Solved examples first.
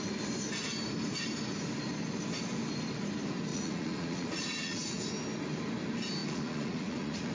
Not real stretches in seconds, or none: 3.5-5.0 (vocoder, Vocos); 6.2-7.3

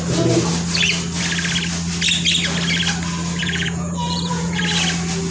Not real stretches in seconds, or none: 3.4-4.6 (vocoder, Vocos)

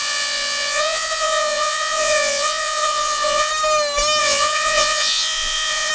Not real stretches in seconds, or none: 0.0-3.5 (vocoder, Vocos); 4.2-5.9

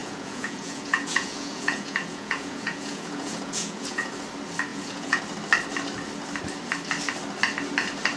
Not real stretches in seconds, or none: 0.0-4.1 (vocoder, Vocos); 4.7-5.2

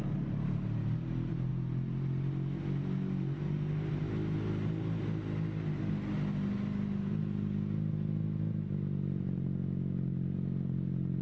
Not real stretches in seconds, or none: none

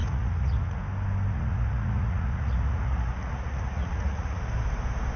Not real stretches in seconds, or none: 0.0-0.8 (vocoder, Vocos); 1.3-4.4

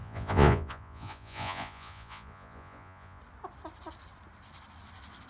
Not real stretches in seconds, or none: 0.0-3.2 (vocoder, Vocos)

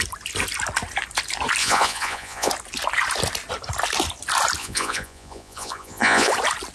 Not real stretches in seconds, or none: 1.6-2.5 (vocoder, Vocos); 4.6-6.3